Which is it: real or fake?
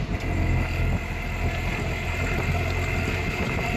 real